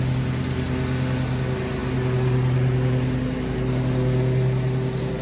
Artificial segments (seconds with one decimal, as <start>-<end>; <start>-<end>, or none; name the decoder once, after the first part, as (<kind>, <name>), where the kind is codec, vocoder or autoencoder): none